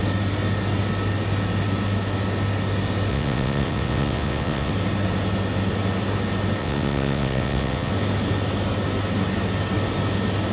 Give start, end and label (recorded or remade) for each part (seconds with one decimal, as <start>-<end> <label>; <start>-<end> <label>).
0.0-3.1 recorded; 3.1-4.7 remade; 4.7-6.6 recorded; 6.6-7.9 remade; 7.9-10.5 recorded

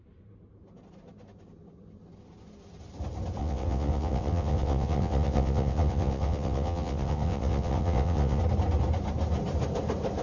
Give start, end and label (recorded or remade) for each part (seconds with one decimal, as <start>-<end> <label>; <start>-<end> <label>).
0.0-3.4 recorded; 3.4-8.4 remade; 8.4-10.2 recorded

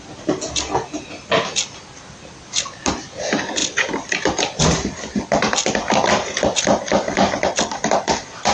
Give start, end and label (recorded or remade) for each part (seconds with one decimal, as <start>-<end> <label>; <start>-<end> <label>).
0.0-8.5 recorded